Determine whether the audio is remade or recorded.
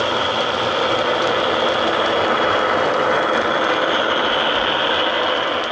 recorded